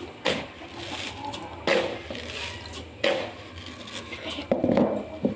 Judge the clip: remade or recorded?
recorded